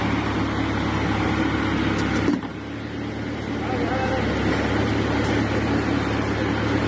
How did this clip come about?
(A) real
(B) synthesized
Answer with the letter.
A